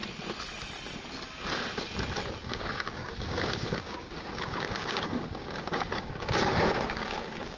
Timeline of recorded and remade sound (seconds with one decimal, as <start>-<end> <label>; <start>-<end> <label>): 0.0-2.5 recorded; 2.5-7.6 remade